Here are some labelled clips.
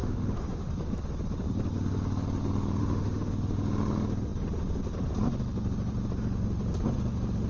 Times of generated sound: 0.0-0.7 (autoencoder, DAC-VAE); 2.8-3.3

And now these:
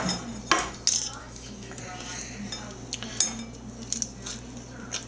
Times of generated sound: 1.2-1.8 (autoencoder, DAC-VAE)

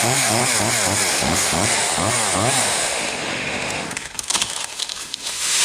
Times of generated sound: 0.0-0.4 (autoencoder, DAC-VAE); 1.1-1.9; 2.6-5.6